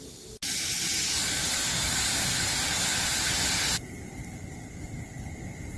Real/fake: real